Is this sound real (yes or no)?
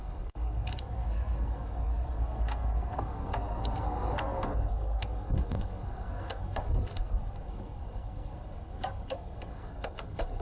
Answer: no